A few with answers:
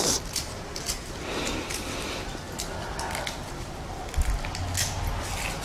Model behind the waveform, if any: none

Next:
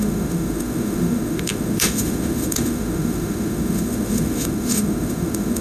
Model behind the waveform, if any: autoencoder, DAC-VAE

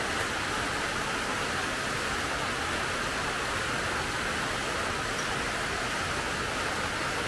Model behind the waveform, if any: none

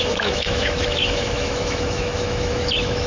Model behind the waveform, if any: autoencoder, DAC-VAE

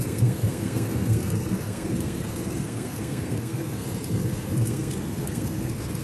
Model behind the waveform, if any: codec, SNAC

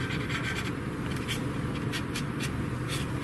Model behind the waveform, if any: none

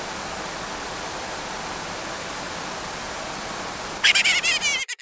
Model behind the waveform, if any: none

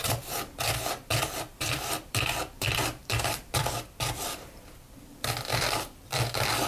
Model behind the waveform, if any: vocoder, BigVGAN v2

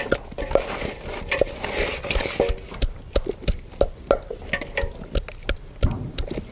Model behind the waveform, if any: none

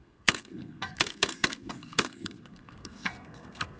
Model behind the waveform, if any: codec, SNAC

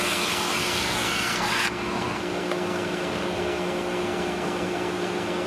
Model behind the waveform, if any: codec, SNAC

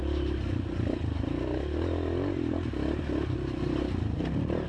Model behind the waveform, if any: none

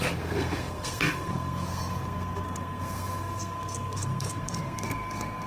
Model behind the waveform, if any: codec, SNAC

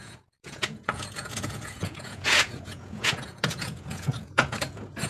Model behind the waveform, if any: vocoder, Vocos